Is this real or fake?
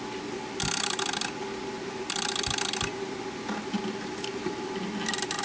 real